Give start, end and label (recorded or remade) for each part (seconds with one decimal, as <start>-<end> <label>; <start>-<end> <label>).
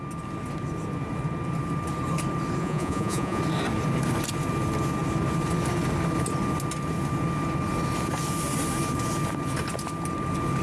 0.0-2.6 recorded; 2.6-3.4 remade; 3.4-10.6 recorded